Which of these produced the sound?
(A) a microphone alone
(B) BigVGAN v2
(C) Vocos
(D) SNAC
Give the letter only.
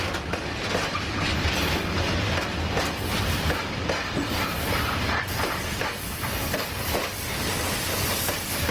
B